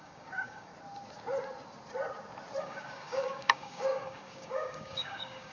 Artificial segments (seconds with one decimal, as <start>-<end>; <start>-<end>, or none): 0.0-0.7; 2.6-5.5